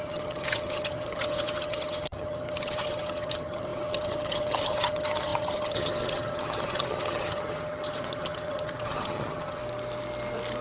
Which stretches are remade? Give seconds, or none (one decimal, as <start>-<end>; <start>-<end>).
0.0-9.6